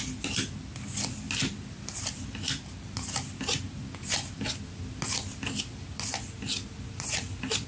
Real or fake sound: real